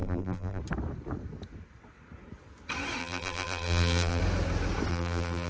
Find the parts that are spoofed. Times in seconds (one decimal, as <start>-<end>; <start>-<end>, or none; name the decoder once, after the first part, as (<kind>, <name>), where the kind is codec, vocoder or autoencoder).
0.0-0.6 (vocoder, BigVGAN v2); 3.0-4.2; 4.9-5.5